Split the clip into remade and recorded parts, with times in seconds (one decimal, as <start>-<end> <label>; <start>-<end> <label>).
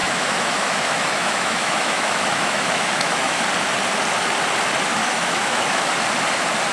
0.0-3.4 remade; 3.4-5.0 recorded; 5.0-5.9 remade; 5.9-6.7 recorded